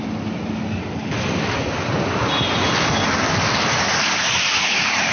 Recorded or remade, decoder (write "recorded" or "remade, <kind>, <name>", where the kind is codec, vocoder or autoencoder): recorded